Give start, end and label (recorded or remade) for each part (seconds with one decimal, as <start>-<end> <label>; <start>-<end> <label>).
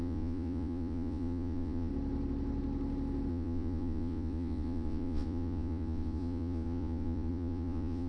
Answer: 0.0-1.9 remade; 1.9-3.3 recorded; 3.3-8.1 remade